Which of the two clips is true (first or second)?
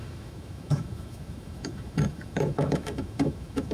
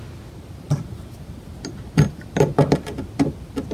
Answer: second